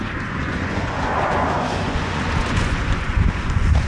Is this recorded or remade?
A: remade